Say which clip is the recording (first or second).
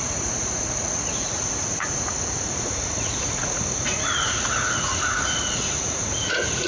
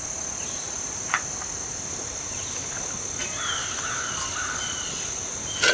second